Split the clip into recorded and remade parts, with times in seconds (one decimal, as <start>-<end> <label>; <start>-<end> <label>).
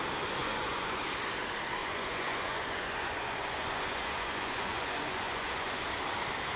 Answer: 0.0-0.4 recorded; 0.4-1.0 remade; 1.0-1.8 recorded; 1.8-5.8 remade; 5.8-6.6 recorded